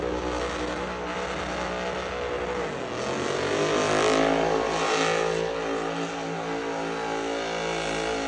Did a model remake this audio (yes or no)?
no